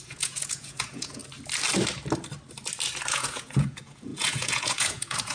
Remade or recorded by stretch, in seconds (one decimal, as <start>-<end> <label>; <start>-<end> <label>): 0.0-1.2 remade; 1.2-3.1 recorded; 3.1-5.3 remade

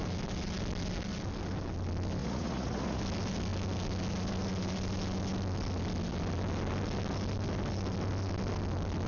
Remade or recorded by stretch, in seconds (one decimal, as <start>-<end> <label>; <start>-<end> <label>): 0.0-2.2 recorded; 2.2-3.0 remade; 3.0-9.1 recorded

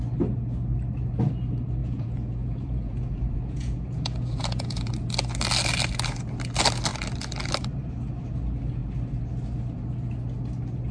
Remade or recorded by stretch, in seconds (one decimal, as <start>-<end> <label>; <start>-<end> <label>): 0.0-1.8 recorded; 1.8-4.9 remade; 4.9-10.9 recorded

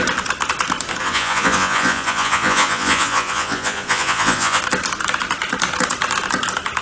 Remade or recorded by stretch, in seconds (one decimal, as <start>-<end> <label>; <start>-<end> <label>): 0.0-1.0 recorded; 1.0-4.6 remade; 4.6-6.8 recorded

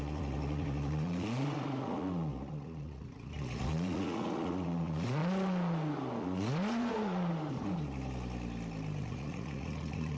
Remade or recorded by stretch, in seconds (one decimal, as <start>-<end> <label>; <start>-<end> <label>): 0.0-5.2 remade; 5.2-6.2 recorded; 6.2-7.3 remade; 7.3-9.0 recorded; 9.0-10.2 remade